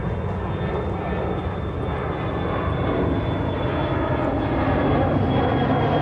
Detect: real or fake real